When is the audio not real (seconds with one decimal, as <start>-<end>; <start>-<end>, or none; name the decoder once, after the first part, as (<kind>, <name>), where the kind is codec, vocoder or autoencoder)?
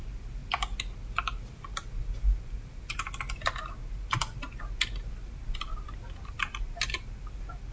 none